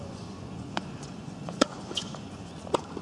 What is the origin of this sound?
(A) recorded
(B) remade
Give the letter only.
B